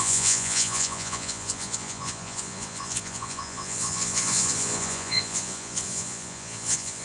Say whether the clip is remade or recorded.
remade